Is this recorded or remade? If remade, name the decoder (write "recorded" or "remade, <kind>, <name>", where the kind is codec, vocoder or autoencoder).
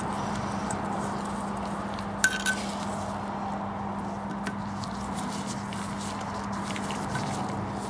recorded